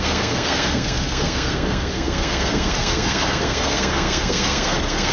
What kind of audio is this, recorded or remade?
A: remade